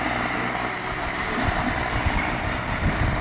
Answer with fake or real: fake